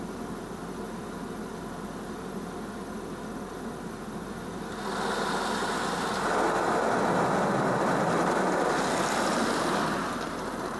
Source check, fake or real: real